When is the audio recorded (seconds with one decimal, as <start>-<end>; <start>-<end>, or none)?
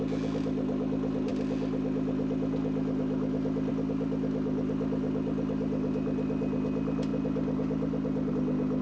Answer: 0.0-8.8